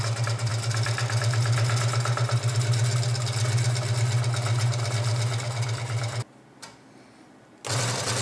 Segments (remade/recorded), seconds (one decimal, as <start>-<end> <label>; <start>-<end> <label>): 0.0-8.2 recorded